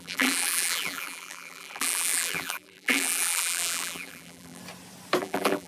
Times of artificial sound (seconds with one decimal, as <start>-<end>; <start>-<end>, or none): 0.0-4.6; 5.2-5.7